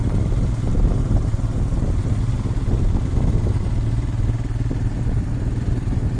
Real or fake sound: real